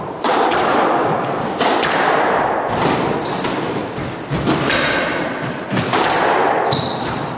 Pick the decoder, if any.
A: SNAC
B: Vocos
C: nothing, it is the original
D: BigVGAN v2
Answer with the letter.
C